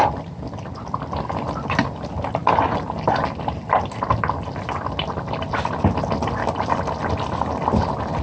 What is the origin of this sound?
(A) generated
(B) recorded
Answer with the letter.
B